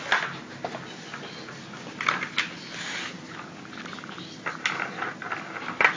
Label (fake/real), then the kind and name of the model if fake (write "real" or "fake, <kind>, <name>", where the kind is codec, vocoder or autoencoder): real